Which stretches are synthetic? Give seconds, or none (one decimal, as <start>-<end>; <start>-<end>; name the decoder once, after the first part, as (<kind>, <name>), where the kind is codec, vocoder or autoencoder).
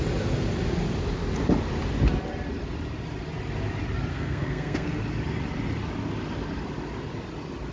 4.1-5.0 (codec, SNAC)